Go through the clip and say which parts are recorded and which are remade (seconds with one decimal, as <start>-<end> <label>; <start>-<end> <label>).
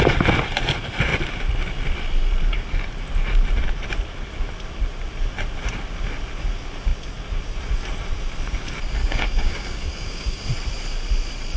0.0-9.0 recorded; 9.0-10.5 remade; 10.5-11.6 recorded